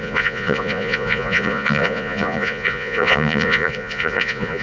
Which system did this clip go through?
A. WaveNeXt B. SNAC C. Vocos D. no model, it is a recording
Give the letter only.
C